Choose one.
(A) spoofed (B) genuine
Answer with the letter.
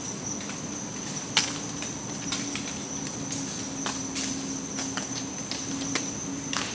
B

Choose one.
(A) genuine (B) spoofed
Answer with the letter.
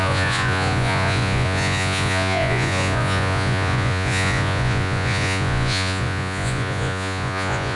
B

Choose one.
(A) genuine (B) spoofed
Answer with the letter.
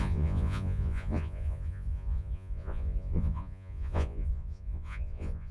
B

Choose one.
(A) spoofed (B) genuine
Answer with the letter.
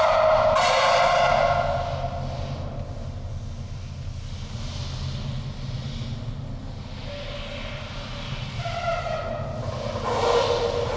B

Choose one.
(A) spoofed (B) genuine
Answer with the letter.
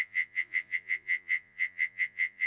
A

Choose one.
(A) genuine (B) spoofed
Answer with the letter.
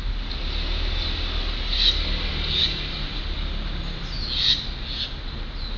A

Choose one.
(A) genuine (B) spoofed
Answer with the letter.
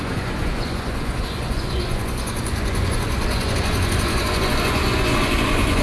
B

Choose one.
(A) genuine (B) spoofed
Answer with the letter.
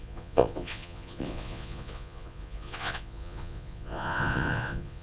B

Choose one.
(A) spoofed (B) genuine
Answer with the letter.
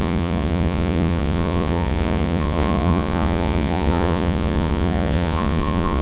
A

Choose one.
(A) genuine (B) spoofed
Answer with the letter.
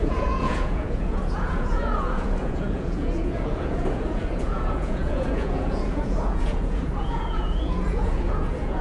B